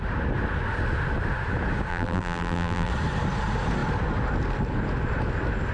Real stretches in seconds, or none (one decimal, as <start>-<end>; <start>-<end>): 0.0-1.9; 2.9-5.7